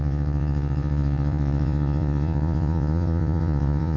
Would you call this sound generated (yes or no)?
yes